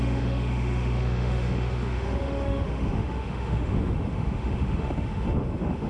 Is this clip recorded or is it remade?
remade